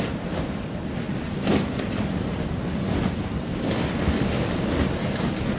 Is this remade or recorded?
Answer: recorded